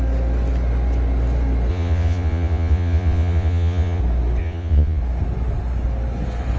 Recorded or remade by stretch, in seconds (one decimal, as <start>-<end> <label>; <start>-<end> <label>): 0.0-1.7 recorded; 1.7-4.0 remade; 4.0-4.4 recorded; 4.4-5.0 remade; 5.0-6.6 recorded